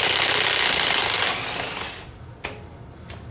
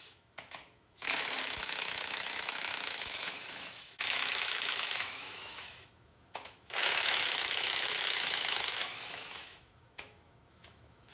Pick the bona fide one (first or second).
first